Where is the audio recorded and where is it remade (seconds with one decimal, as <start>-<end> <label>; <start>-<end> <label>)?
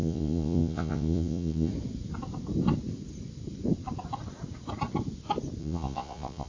0.0-1.7 remade; 1.7-5.6 recorded; 5.6-6.5 remade